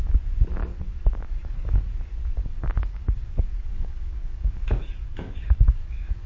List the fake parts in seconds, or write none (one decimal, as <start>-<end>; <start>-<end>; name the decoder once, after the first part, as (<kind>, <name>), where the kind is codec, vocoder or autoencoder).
0.6-1.8 (codec, DAC); 2.4-6.3